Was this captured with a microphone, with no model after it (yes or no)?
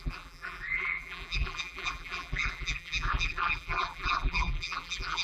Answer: no